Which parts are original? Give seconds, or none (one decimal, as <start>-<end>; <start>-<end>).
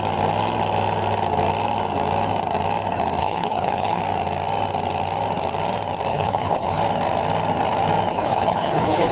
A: 0.0-3.2; 4.0-6.1; 6.8-8.1